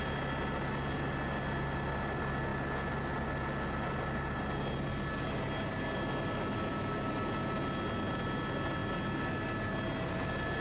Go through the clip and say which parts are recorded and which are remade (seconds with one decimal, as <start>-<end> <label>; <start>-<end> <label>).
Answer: 0.0-10.6 recorded